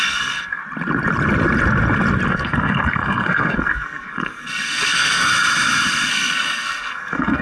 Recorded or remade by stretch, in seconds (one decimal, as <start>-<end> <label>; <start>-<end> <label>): 0.0-0.6 remade; 0.6-2.3 recorded; 2.3-5.3 remade; 5.3-6.1 recorded; 6.1-7.4 remade